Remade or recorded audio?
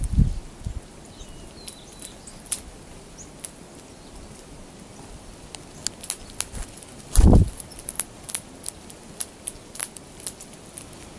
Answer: recorded